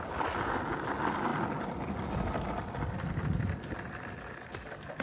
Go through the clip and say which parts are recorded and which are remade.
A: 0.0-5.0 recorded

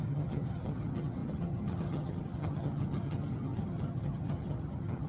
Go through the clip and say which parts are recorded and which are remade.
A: 0.0-5.1 remade